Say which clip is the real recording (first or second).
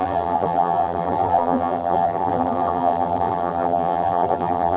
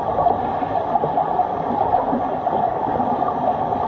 second